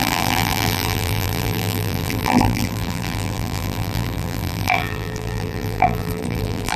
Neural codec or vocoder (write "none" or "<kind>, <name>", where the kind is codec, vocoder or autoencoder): vocoder, BigVGAN v2